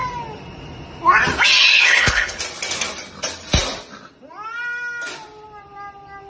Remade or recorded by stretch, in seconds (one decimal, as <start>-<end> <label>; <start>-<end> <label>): 0.0-1.7 recorded; 1.7-2.4 remade; 2.4-6.3 recorded

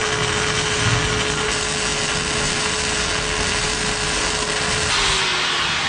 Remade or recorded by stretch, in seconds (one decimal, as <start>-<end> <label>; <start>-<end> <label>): 0.0-5.9 recorded

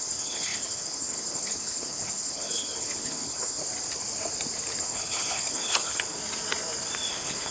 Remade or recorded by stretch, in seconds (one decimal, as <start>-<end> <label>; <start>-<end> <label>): 0.0-3.6 remade; 3.6-4.8 recorded; 4.8-6.2 remade; 6.2-7.1 recorded; 7.1-7.5 remade

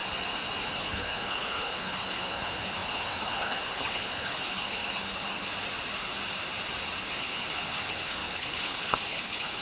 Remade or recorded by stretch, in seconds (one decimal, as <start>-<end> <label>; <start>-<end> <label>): 0.0-0.6 recorded; 0.6-5.5 remade; 5.5-7.0 recorded; 7.0-9.6 remade

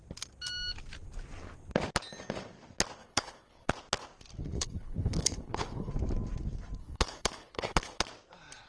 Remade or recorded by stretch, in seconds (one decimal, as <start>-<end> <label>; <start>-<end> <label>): 0.0-3.0 recorded; 3.0-3.7 remade; 3.7-4.4 recorded; 4.4-5.9 remade; 5.9-6.8 recorded; 6.8-8.0 remade; 8.0-8.7 recorded

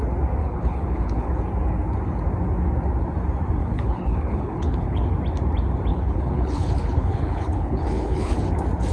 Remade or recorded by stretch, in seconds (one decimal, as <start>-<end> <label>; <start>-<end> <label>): 0.0-0.4 recorded; 0.4-1.4 remade; 1.4-3.6 recorded; 3.6-5.1 remade; 5.1-5.9 recorded; 5.9-8.4 remade; 8.4-8.9 recorded

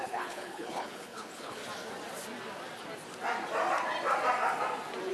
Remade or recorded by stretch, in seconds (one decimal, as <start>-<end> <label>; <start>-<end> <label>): 0.0-1.6 remade; 1.6-5.1 recorded